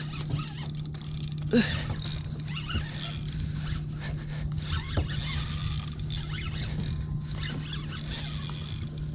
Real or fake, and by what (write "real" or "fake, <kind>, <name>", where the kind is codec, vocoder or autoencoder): real